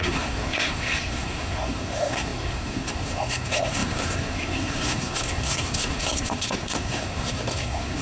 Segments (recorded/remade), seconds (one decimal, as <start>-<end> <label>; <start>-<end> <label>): 0.0-8.0 remade